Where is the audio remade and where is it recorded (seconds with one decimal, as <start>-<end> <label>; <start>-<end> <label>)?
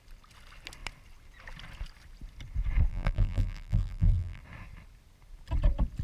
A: 0.0-2.9 recorded; 2.9-4.4 remade; 4.4-6.0 recorded